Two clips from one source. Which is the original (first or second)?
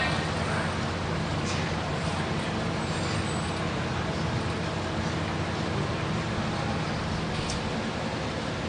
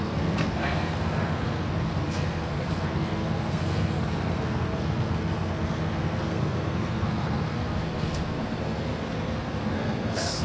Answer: first